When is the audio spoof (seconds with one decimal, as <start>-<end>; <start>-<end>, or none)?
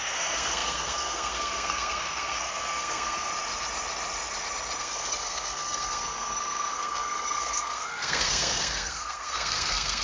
0.0-3.3; 4.8-10.0